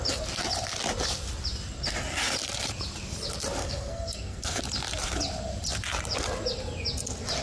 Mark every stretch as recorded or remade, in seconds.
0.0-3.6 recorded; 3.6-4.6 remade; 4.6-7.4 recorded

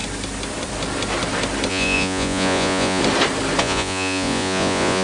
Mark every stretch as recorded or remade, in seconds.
0.0-1.7 recorded; 1.7-3.0 remade; 3.0-3.6 recorded; 3.6-5.0 remade

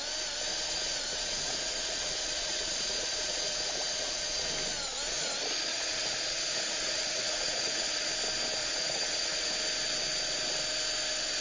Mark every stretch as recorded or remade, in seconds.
0.0-0.5 recorded; 0.5-4.5 remade; 4.5-5.7 recorded; 5.7-8.1 remade; 8.1-8.6 recorded; 8.6-9.5 remade; 9.5-11.4 recorded

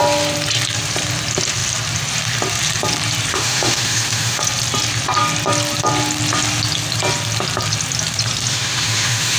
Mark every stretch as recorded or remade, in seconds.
0.0-3.3 recorded; 3.3-4.4 remade; 4.4-8.5 recorded; 8.5-9.4 remade

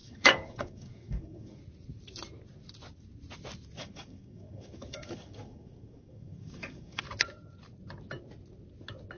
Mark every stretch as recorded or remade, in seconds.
0.0-1.6 remade; 1.6-3.8 recorded; 3.8-7.0 remade; 7.0-9.2 recorded

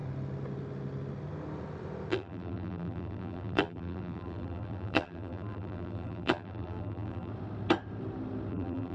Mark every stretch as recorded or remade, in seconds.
0.0-2.1 recorded; 2.1-7.3 remade; 7.3-8.5 recorded; 8.5-8.9 remade

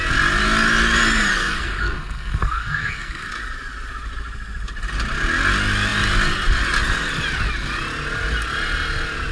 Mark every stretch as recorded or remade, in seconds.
0.0-1.4 recorded; 1.4-3.3 remade; 3.3-9.3 recorded

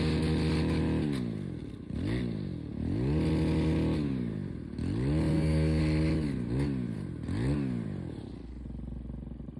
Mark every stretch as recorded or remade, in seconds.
0.0-5.3 recorded; 5.3-5.8 remade; 5.8-9.6 recorded